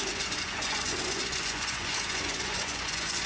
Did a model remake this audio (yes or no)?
yes